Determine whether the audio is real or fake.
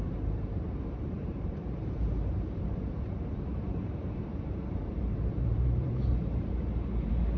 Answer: fake